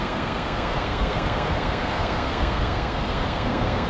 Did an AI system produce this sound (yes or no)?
yes